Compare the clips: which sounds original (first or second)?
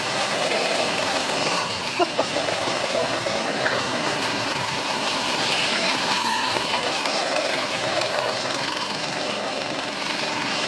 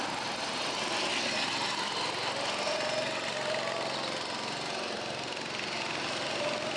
second